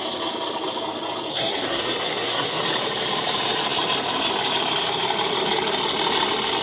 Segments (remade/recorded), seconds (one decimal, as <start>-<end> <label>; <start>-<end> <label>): 0.0-1.3 recorded; 1.3-2.6 remade; 2.6-6.6 recorded